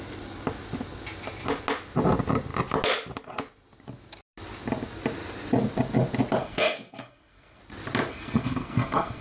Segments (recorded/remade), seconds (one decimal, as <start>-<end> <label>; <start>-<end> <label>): 0.0-6.4 recorded; 6.4-7.6 remade; 7.6-8.1 recorded; 8.1-9.2 remade